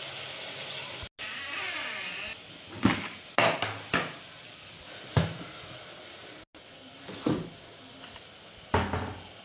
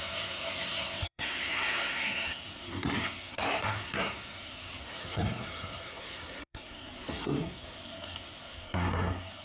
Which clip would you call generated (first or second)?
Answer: second